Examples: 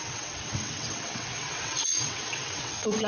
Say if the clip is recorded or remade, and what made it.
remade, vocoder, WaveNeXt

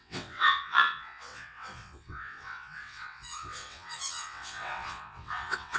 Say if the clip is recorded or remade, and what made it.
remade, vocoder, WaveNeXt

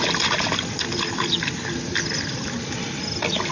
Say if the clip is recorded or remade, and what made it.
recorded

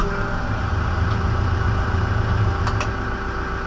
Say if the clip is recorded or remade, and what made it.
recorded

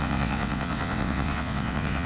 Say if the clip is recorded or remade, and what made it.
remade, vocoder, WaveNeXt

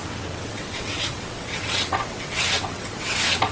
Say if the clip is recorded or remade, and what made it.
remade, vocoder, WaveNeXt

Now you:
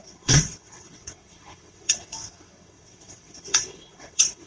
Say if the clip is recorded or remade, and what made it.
remade, vocoder, WaveNeXt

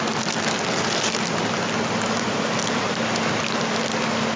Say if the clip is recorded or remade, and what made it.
recorded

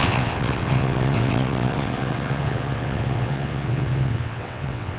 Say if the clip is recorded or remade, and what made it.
remade, vocoder, WaveNeXt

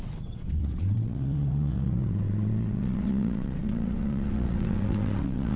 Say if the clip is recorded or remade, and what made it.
remade, vocoder, WaveNeXt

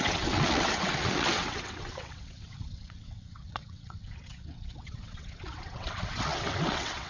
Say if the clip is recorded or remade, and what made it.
remade, vocoder, WaveNeXt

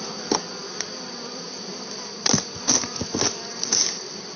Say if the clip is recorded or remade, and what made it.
recorded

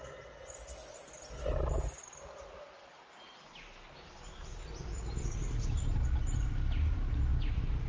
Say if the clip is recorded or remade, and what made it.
recorded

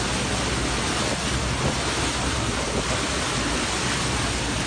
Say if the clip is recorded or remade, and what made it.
recorded